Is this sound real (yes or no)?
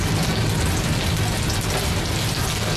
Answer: yes